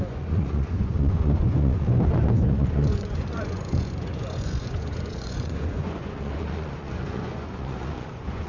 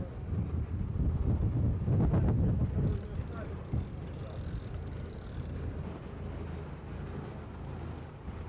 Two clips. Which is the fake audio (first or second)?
first